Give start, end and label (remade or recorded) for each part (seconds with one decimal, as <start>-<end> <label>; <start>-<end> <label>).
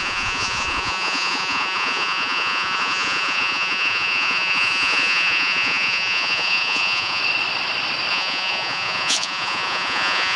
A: 0.0-7.2 remade; 7.2-8.1 recorded; 8.1-10.4 remade